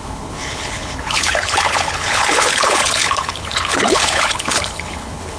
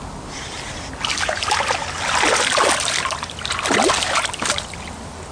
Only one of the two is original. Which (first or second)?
second